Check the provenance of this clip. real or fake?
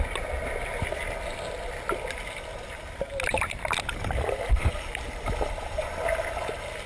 real